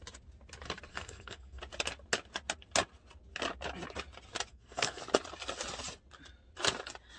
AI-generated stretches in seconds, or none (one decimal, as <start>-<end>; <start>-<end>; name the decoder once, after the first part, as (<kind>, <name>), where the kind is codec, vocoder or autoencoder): 0.9-1.6 (codec, SNAC); 4.5-5.0